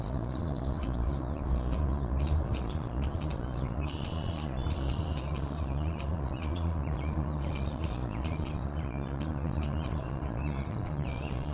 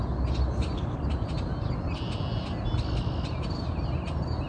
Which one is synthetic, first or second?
first